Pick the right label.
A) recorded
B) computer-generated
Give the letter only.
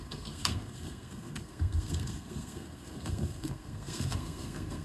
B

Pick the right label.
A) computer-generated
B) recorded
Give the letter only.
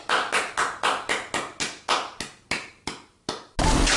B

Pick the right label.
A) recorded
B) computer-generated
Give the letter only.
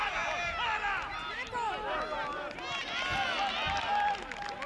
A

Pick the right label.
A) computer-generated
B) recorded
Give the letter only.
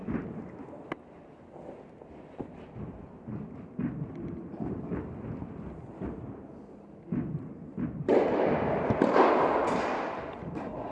B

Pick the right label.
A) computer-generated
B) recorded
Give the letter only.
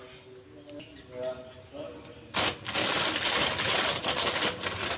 B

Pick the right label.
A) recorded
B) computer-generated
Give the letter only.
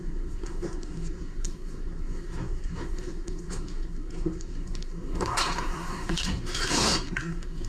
B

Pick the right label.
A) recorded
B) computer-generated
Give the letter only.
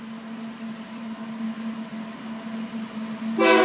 A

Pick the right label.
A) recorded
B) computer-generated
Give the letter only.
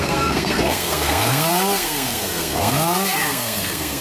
B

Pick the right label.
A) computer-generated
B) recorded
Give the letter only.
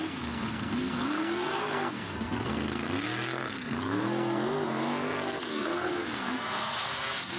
A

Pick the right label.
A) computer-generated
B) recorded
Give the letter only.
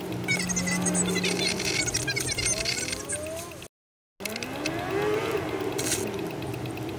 B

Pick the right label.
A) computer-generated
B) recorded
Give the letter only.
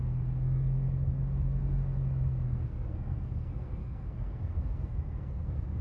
A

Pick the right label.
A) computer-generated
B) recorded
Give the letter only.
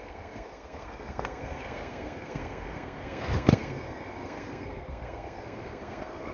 A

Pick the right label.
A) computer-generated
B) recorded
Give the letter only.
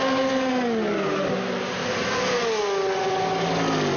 B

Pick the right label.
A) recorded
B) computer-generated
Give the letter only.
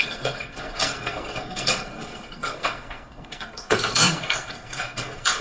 B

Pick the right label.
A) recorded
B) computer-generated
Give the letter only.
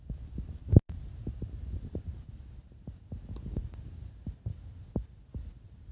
A